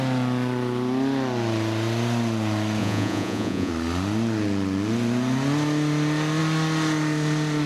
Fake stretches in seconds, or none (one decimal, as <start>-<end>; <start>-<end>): 2.8-3.7